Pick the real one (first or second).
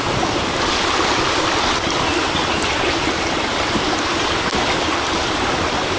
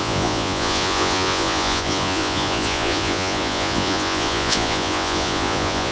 first